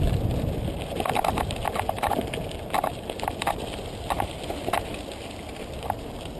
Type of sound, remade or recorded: recorded